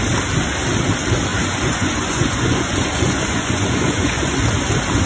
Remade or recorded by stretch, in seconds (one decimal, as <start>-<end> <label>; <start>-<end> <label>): 0.0-1.3 recorded; 1.3-4.4 remade; 4.4-5.1 recorded